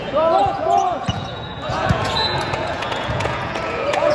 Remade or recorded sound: remade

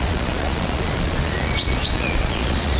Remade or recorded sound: remade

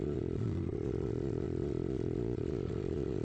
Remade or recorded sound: remade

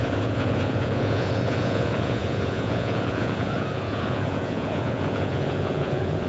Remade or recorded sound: remade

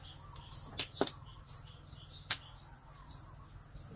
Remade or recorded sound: recorded